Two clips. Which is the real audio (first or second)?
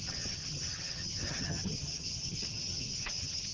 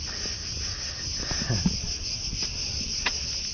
second